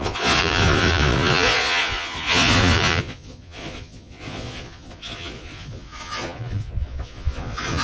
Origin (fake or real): fake